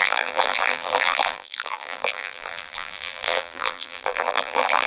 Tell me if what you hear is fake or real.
fake